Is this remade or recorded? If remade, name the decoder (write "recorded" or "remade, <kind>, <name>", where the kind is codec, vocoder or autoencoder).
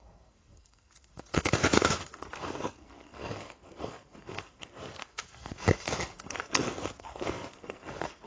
remade, codec, SNAC